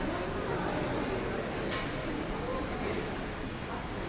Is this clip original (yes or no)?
yes